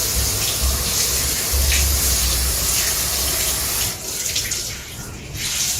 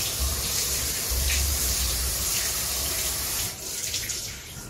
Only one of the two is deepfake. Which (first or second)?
second